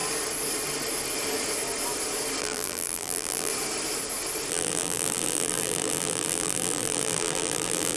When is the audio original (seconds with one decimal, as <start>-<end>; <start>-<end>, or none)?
0.0-2.4; 3.5-4.5